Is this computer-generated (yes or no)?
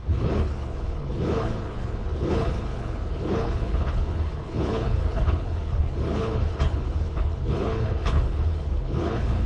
yes